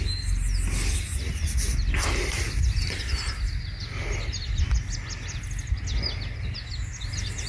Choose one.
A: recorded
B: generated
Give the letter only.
A